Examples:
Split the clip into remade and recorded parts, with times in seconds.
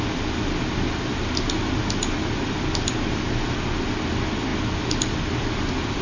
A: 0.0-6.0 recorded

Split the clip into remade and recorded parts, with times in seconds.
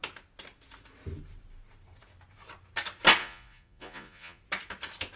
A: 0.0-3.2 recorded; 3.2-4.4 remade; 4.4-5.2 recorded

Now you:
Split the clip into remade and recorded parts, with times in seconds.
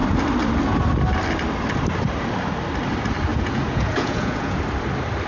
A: 0.0-3.3 recorded; 3.3-4.6 remade; 4.6-5.3 recorded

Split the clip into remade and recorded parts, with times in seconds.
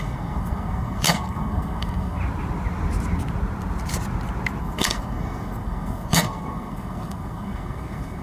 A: 0.0-2.2 remade; 2.2-4.6 recorded; 4.6-8.2 remade